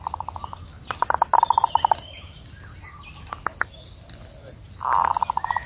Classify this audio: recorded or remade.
recorded